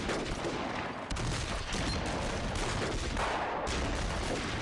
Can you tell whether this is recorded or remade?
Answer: recorded